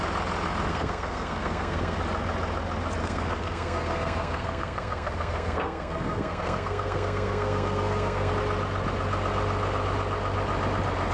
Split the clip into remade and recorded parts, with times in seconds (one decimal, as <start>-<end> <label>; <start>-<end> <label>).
0.0-0.7 recorded; 0.7-2.0 remade; 2.0-3.0 recorded; 3.0-8.3 remade; 8.3-11.1 recorded